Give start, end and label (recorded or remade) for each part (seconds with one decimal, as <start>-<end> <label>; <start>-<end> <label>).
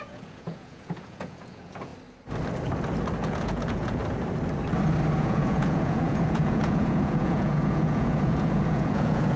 0.0-1.9 remade; 1.9-3.2 recorded; 3.2-4.0 remade; 4.0-5.2 recorded; 5.2-9.4 remade